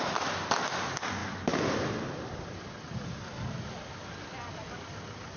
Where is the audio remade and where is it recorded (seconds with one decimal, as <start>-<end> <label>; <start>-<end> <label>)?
0.0-5.4 recorded